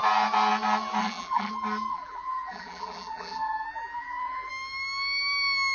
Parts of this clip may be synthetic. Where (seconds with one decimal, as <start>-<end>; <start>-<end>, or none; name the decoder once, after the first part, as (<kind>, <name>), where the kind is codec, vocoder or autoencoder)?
1.0-1.5 (vocoder, BigVGAN v2); 1.9-4.5